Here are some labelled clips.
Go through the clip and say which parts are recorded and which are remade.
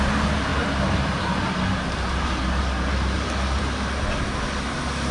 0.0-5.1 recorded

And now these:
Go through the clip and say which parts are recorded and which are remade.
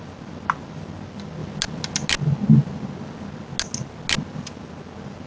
0.0-5.3 recorded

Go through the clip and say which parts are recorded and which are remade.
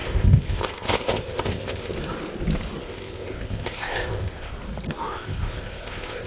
0.0-1.9 remade; 1.9-2.8 recorded; 2.8-4.5 remade; 4.5-5.1 recorded; 5.1-6.3 remade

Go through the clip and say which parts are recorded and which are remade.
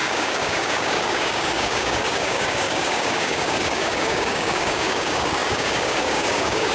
0.0-6.7 remade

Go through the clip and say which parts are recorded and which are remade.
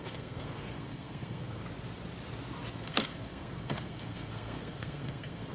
0.0-1.6 remade; 1.6-2.7 recorded; 2.7-5.5 remade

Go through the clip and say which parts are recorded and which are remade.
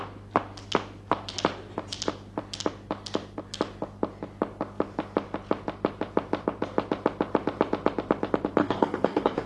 0.0-8.6 recorded; 8.6-9.5 remade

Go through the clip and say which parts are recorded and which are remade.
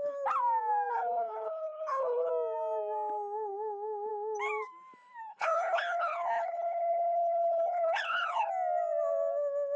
0.0-0.9 recorded; 0.9-2.3 remade; 2.3-5.3 recorded; 5.3-8.5 remade; 8.5-9.8 recorded